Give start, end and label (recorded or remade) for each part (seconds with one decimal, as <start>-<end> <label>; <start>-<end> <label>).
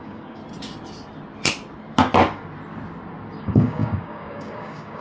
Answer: 0.0-0.4 remade; 0.4-3.4 recorded; 3.4-5.0 remade